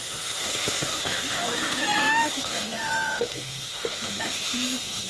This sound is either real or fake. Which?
fake